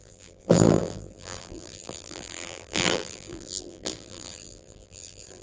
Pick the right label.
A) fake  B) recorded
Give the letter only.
A